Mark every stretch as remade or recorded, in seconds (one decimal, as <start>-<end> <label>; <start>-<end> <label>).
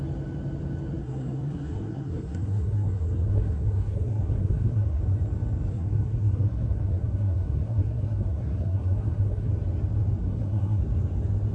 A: 0.0-1.0 recorded; 1.0-5.0 remade; 5.0-5.7 recorded; 5.7-9.5 remade; 9.5-10.2 recorded; 10.2-10.8 remade; 10.8-11.5 recorded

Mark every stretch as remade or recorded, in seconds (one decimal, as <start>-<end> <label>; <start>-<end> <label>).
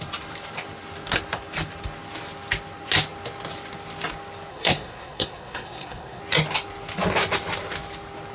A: 0.0-4.5 recorded; 4.5-6.2 remade; 6.2-8.3 recorded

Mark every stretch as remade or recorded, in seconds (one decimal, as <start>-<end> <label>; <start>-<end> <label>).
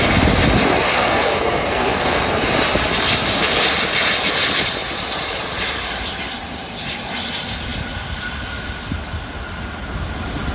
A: 0.0-0.9 recorded; 0.9-2.2 remade; 2.2-10.5 recorded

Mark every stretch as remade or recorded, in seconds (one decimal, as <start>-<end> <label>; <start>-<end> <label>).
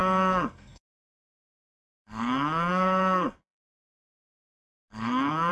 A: 0.0-0.9 remade; 0.9-1.9 recorded; 1.9-5.5 remade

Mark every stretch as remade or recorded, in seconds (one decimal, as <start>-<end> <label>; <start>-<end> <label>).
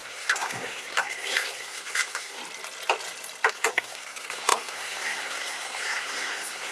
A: 0.0-2.4 remade; 2.4-3.5 recorded; 3.5-6.7 remade